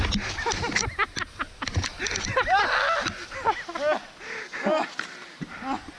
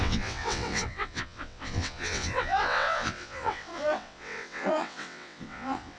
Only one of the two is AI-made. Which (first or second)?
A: second